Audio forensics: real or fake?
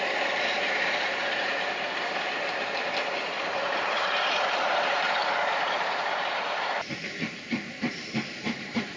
fake